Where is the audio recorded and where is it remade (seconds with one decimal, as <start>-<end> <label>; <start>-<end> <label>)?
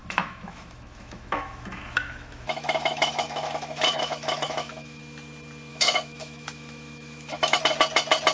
0.0-5.0 remade; 5.0-5.7 recorded; 5.7-7.6 remade; 7.6-8.3 recorded